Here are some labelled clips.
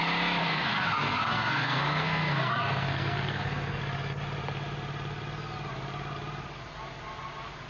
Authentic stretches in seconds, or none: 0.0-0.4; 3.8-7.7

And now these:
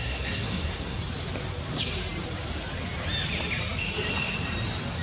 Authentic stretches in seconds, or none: 1.0-5.0

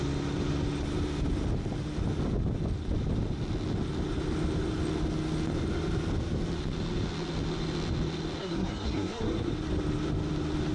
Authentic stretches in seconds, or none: 0.0-8.4; 9.5-10.7